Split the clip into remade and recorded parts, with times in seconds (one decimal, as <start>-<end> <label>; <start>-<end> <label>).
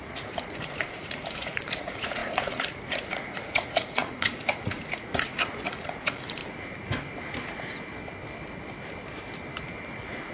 0.0-6.4 remade; 6.4-10.3 recorded